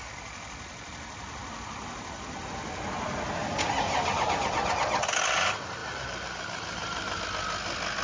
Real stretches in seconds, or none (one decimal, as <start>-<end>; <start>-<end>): 0.0-5.8; 7.2-8.0